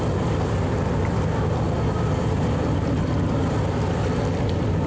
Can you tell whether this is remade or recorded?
recorded